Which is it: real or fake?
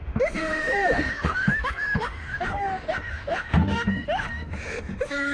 fake